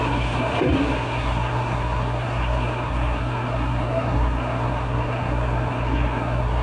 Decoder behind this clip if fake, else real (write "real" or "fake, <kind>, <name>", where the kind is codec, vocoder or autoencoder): fake, codec, SNAC